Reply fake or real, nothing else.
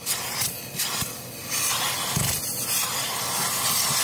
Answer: real